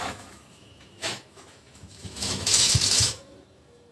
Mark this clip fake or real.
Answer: fake